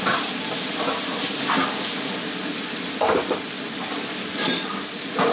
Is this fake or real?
real